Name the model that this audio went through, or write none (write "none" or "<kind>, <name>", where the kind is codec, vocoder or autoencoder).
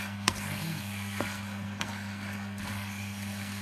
codec, SNAC